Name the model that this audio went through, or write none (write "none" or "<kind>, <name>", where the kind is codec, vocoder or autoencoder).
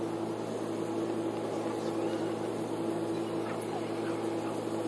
none